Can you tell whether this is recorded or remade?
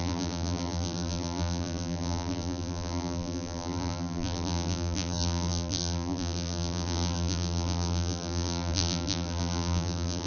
remade